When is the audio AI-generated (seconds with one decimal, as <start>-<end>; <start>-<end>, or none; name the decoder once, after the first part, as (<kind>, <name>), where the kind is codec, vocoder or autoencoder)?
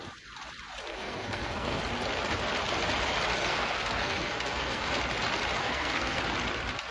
0.9-1.8 (codec, SNAC); 3.4-5.0; 5.6-6.2